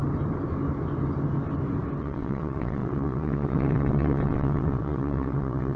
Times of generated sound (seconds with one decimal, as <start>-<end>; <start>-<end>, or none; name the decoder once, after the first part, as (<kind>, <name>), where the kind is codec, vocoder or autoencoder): 2.0-5.8 (vocoder, WaveNeXt)